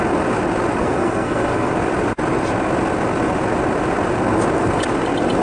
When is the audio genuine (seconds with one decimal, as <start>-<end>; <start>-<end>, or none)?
0.0-0.8; 1.7-5.4